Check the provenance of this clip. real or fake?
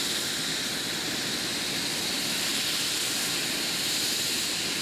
real